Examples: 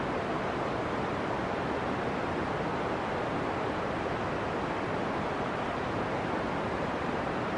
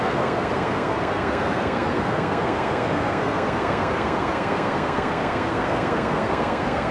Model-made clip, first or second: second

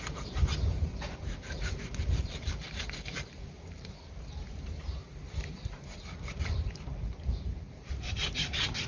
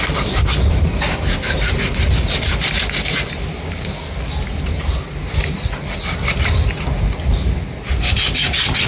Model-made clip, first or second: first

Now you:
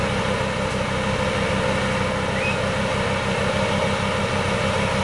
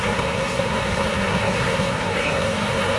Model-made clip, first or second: second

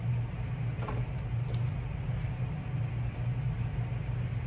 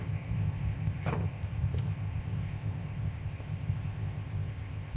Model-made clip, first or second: second